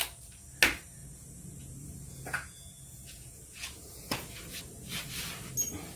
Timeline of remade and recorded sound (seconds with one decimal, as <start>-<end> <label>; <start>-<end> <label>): 0.0-1.0 recorded; 1.0-4.6 remade; 4.6-6.0 recorded